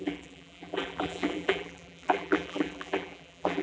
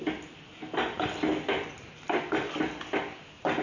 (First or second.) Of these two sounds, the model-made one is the first